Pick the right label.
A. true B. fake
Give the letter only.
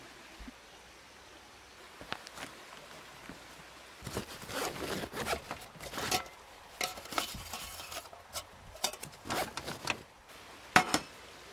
A